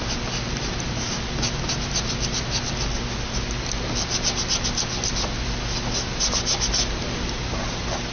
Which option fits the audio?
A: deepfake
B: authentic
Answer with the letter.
B